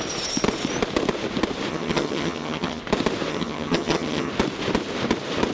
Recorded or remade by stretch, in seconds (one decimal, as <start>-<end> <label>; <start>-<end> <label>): 0.0-1.7 recorded; 1.7-2.8 remade; 2.8-3.3 recorded; 3.3-4.3 remade; 4.3-5.5 recorded